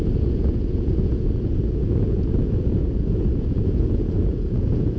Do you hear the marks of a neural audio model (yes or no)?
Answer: yes